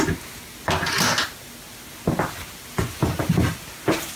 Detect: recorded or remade recorded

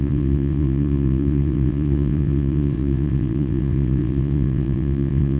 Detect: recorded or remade remade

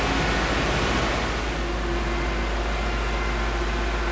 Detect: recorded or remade recorded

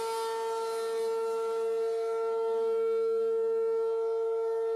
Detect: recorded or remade recorded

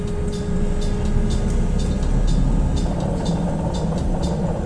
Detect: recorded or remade recorded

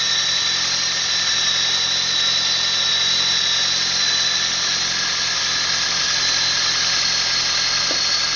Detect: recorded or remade recorded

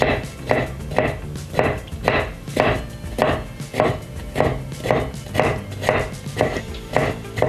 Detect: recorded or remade recorded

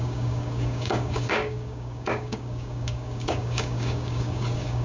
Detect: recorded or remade remade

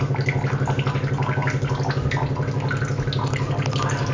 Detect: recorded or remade recorded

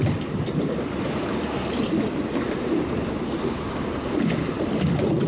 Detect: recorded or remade recorded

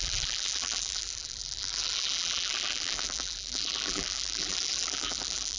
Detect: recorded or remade remade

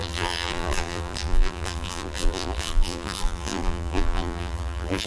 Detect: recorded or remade remade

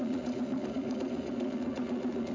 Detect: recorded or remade remade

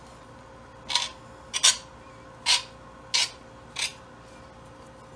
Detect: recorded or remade recorded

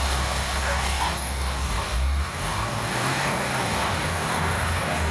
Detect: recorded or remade remade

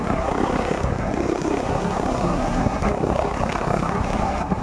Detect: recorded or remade remade